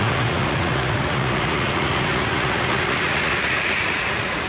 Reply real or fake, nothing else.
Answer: fake